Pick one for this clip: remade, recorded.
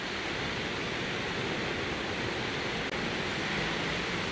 recorded